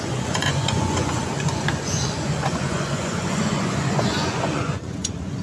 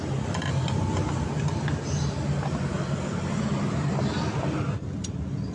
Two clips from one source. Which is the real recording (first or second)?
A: second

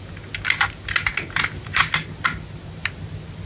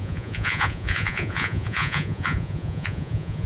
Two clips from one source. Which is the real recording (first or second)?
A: first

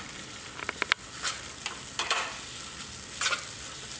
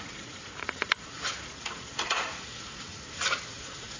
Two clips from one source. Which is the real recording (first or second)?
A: first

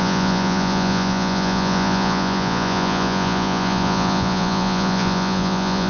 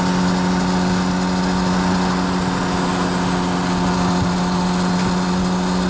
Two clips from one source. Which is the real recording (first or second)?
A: second